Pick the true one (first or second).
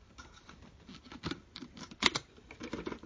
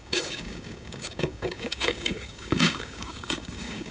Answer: first